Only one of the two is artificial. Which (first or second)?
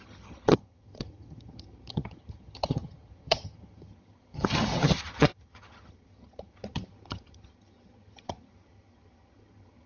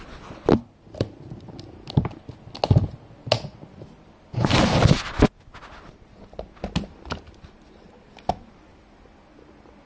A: first